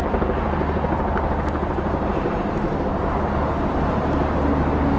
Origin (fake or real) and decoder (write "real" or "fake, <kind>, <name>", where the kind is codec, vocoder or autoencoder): real